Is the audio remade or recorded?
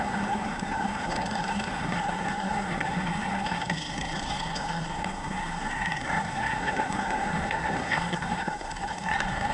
remade